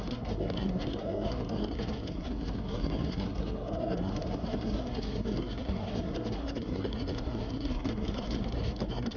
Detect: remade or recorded remade